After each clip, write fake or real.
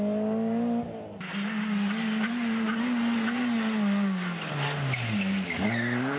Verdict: real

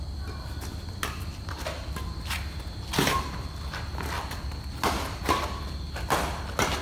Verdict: real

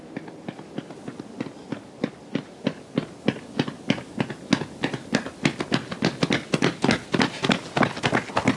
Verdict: real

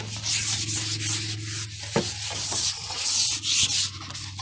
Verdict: real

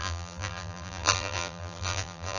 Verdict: fake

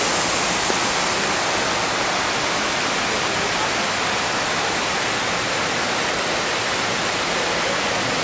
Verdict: real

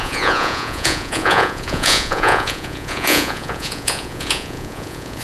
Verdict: fake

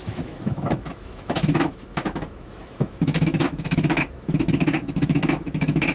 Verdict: fake